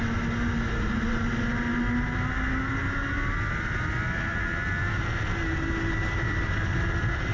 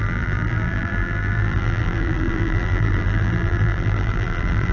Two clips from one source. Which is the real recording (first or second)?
first